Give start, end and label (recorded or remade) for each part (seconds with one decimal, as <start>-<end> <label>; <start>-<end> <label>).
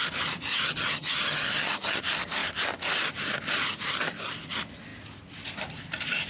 0.0-0.5 recorded; 0.5-2.0 remade; 2.0-6.3 recorded